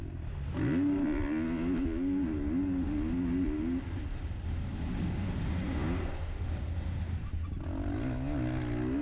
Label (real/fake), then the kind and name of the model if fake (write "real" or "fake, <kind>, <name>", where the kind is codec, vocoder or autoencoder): real